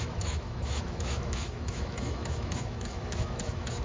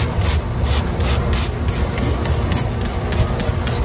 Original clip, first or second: second